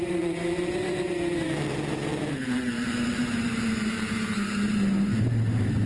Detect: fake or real fake